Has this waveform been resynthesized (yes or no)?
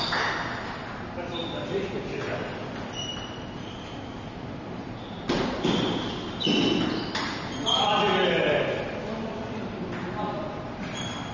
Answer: no